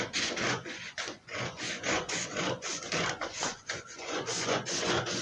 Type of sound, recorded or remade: remade